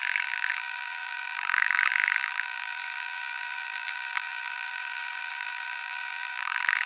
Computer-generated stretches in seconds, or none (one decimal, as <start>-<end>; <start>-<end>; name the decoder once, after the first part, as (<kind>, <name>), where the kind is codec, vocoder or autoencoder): 0.0-6.9 (vocoder, BigVGAN v2)